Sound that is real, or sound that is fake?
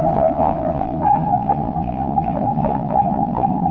fake